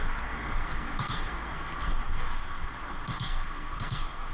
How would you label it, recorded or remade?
remade